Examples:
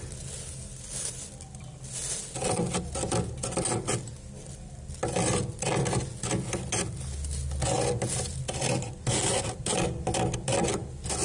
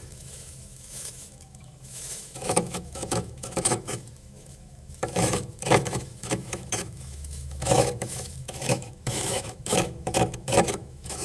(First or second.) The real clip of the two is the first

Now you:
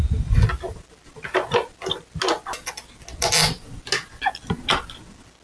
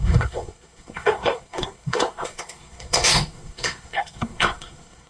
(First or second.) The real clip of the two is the first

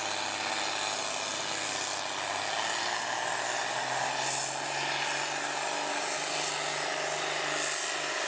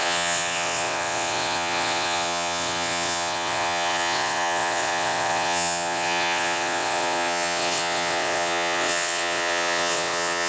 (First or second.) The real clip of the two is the first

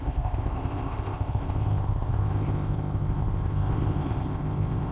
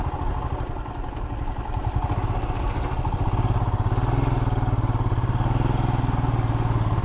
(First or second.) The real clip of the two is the second